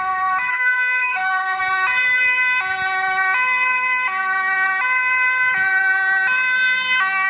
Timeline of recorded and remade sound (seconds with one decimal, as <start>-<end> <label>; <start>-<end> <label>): 0.0-0.5 recorded; 0.5-1.6 remade; 1.6-7.3 recorded